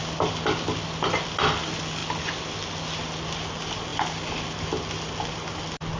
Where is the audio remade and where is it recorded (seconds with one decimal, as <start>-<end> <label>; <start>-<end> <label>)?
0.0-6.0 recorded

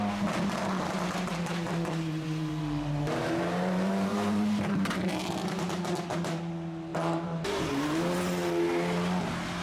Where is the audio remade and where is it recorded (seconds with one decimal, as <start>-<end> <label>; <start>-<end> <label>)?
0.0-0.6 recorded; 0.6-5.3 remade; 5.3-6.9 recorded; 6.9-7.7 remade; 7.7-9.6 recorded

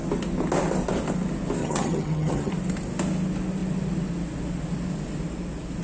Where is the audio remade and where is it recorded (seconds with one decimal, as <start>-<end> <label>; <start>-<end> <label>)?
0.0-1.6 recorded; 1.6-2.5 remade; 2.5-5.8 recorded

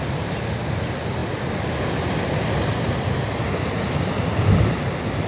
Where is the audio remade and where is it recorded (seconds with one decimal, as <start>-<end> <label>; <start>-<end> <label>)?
0.0-5.3 recorded

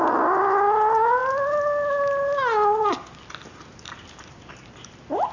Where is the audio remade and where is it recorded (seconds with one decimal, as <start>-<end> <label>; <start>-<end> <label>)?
0.0-5.3 recorded

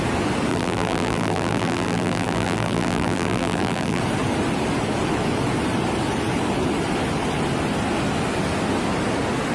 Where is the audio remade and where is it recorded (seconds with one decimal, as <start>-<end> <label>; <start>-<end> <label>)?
0.0-0.5 recorded; 0.5-4.0 remade; 4.0-9.5 recorded

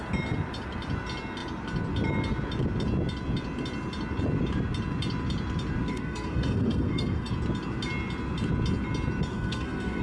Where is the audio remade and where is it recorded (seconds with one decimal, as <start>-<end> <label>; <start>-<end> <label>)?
0.0-5.9 recorded; 5.9-7.3 remade; 7.3-9.3 recorded; 9.3-10.0 remade